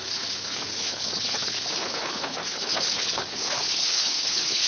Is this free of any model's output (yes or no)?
no